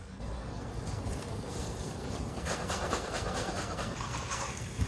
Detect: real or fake fake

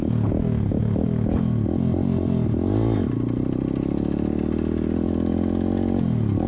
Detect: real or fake real